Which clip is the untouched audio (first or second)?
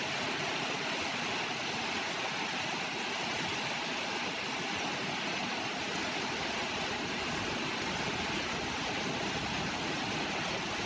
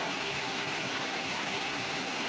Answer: first